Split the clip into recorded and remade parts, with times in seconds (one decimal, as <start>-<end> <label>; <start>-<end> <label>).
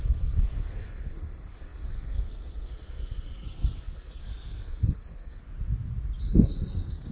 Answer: 0.0-5.4 remade; 5.4-6.2 recorded; 6.2-7.1 remade